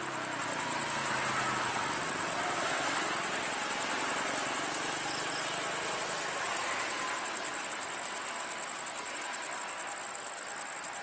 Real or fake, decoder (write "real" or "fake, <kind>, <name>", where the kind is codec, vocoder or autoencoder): real